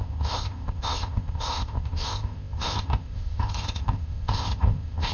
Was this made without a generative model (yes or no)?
no